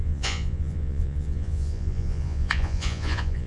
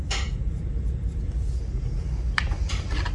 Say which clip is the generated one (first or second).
first